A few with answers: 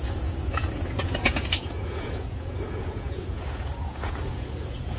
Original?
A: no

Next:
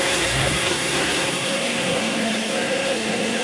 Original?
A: no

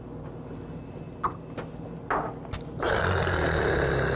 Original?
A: yes